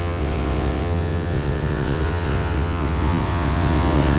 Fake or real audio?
fake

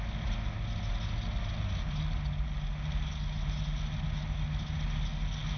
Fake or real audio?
real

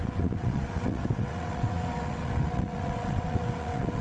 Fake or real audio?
fake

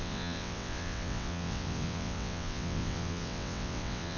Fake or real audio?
fake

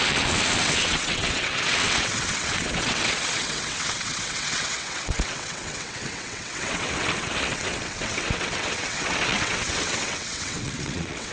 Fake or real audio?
fake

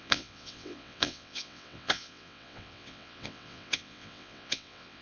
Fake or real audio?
fake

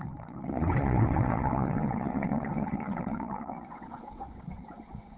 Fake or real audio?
fake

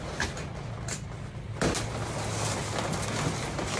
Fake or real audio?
real